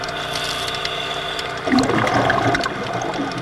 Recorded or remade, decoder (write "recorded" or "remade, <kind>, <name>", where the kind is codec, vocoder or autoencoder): recorded